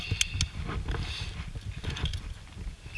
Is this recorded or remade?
recorded